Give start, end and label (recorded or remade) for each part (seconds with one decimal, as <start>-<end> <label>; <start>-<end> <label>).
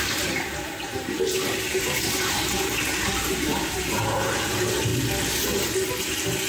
0.0-4.9 remade; 4.9-6.0 recorded; 6.0-6.5 remade